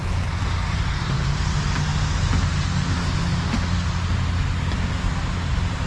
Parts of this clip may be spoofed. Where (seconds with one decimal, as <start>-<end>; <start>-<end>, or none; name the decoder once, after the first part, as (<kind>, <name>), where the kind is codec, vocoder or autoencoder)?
0.7-1.9 (vocoder, BigVGAN v2); 2.9-3.3; 5.2-5.9